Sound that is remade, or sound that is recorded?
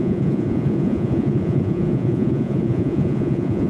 remade